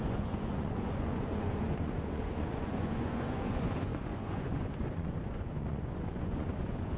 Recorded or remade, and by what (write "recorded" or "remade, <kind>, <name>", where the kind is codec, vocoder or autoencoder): remade, vocoder, Vocos